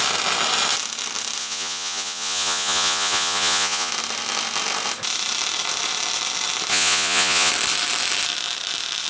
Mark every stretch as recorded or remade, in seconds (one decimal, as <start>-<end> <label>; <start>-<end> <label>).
0.0-1.4 recorded; 1.4-3.9 remade; 3.9-6.7 recorded; 6.7-7.5 remade; 7.5-9.1 recorded